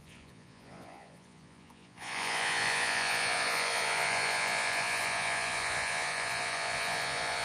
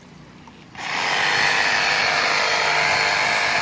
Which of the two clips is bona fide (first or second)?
second